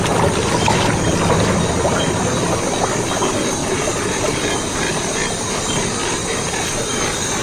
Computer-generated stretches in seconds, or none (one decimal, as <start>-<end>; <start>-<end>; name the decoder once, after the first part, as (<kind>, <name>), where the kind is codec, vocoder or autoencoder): 3.6-4.9 (vocoder, BigVGAN v2); 6.2-7.0